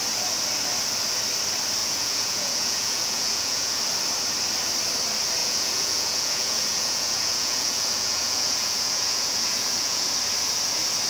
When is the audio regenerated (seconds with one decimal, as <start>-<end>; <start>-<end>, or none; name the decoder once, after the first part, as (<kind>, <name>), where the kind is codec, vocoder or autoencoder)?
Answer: 1.8-3.8 (vocoder, Vocos); 5.4-10.1